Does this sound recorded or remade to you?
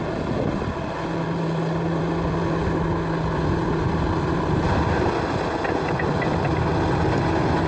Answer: recorded